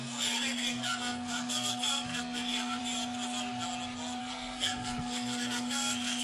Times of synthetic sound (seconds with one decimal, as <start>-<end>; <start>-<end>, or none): 0.0-2.8; 4.2-6.2

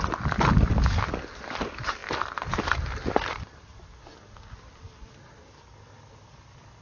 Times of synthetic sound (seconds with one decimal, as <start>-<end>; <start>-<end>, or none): none

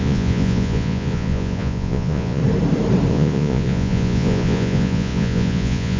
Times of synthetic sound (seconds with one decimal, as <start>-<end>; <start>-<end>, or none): 0.0-2.4; 3.1-6.0

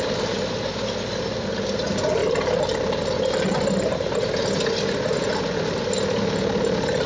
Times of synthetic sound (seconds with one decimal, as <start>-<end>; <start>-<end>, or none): none